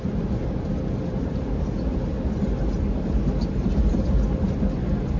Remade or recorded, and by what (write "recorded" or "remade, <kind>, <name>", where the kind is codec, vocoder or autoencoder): recorded